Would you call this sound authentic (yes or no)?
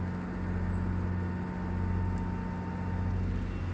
yes